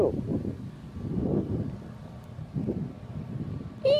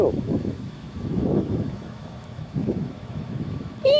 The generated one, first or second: second